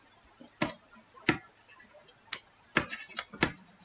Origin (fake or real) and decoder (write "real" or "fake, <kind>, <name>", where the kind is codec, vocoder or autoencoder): real